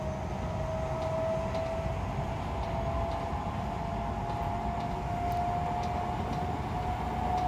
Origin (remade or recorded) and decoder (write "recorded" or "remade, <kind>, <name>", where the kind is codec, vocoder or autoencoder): recorded